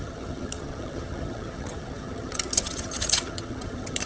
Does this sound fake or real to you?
fake